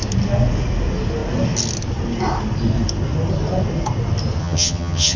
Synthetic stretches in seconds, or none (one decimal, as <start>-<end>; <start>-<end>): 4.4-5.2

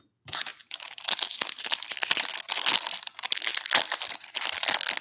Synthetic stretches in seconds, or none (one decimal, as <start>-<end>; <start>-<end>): none

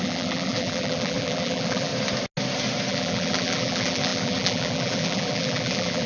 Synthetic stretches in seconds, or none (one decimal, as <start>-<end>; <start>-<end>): 0.0-1.9; 2.9-6.1

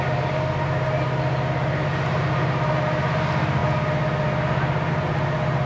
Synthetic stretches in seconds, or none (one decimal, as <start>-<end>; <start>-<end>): none